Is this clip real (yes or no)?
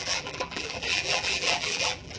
no